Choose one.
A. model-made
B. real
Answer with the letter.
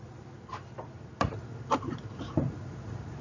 A